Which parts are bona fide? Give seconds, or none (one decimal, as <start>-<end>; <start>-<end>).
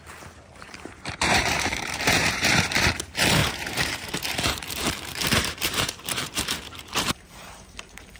none